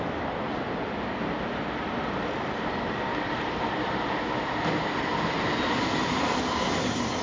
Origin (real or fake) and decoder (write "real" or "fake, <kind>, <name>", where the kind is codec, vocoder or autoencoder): real